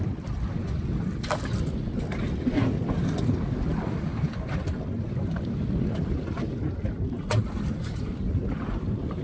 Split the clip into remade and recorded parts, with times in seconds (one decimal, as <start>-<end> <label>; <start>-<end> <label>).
0.0-9.2 recorded